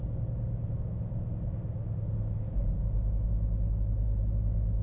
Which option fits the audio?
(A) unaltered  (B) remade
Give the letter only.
A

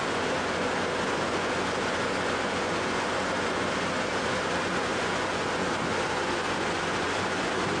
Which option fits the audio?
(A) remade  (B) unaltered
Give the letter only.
A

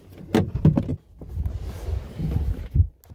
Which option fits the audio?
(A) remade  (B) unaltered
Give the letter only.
B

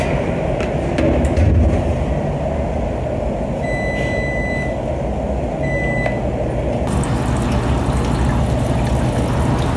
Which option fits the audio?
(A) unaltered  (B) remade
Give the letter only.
A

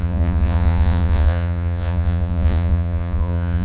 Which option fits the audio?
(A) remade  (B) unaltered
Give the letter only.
A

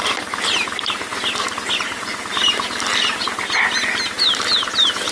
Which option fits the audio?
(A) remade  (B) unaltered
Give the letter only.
B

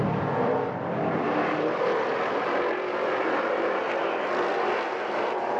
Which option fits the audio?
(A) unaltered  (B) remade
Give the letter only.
B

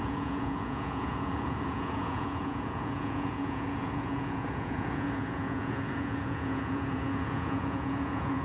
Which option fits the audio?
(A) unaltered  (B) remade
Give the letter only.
B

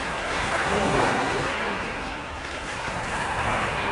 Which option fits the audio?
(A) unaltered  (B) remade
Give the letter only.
B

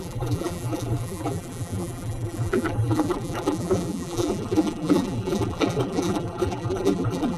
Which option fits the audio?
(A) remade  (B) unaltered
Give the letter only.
A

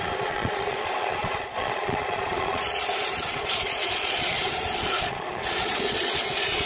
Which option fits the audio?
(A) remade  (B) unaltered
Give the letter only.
A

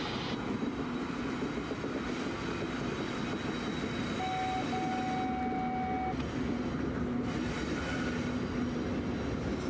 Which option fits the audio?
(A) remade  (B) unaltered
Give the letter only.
B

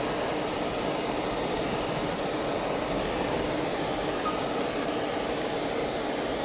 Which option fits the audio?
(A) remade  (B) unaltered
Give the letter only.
B